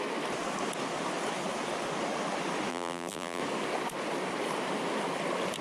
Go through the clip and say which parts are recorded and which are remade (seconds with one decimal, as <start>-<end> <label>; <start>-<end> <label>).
0.0-2.7 recorded; 2.7-3.4 remade; 3.4-5.6 recorded

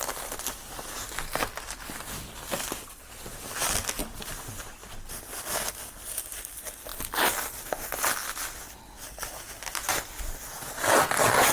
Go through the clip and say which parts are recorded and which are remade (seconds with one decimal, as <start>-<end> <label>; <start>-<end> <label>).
0.0-4.0 recorded; 4.0-4.6 remade; 4.6-11.5 recorded

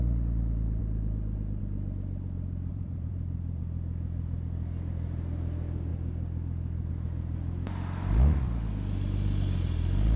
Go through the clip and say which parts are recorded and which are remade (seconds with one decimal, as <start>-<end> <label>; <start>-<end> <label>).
0.0-2.7 recorded; 2.7-3.6 remade; 3.6-10.2 recorded

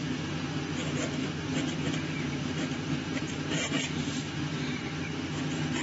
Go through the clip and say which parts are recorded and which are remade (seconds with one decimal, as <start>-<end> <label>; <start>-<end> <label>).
0.0-1.2 recorded; 1.2-4.7 remade; 4.7-5.8 recorded

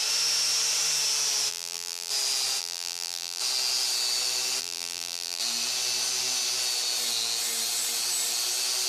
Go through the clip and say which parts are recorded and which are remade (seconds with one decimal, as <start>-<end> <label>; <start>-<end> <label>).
0.0-1.5 recorded; 1.5-2.1 remade; 2.1-2.6 recorded; 2.6-3.4 remade; 3.4-4.6 recorded; 4.6-5.4 remade; 5.4-8.9 recorded

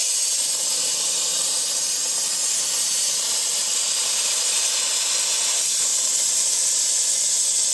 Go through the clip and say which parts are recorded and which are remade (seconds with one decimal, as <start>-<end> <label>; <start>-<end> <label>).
0.0-4.6 remade; 4.6-5.9 recorded; 5.9-6.9 remade; 6.9-7.7 recorded

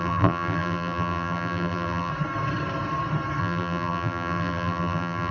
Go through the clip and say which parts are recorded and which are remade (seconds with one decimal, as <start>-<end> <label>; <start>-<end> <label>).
0.0-2.1 remade; 2.1-3.4 recorded; 3.4-5.3 remade